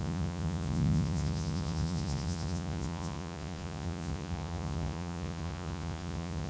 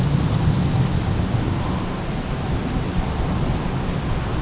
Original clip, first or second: second